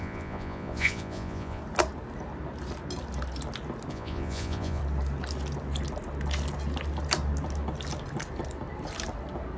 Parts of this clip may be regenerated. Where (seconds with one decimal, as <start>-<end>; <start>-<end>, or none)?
0.0-1.6; 3.9-4.8

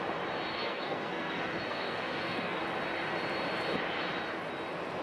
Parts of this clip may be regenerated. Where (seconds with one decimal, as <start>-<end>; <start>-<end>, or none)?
0.5-2.6